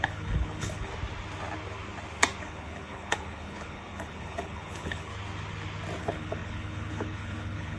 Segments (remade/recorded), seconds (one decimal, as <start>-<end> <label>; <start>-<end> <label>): 0.0-0.9 remade; 0.9-2.4 recorded; 2.4-5.1 remade; 5.1-6.0 recorded; 6.0-7.8 remade